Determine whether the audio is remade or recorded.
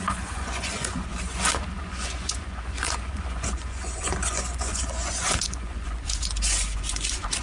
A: remade